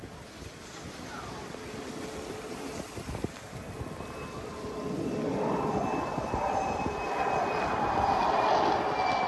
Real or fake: real